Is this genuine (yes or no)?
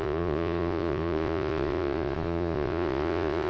no